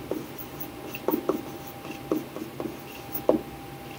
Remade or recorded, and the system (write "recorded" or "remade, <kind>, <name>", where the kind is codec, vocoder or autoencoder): recorded